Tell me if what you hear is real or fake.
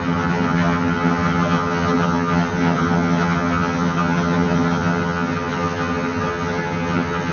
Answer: fake